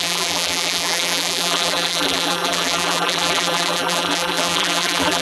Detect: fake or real fake